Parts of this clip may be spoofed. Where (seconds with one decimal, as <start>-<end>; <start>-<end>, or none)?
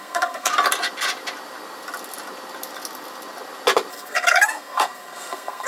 0.0-0.5; 3.9-5.7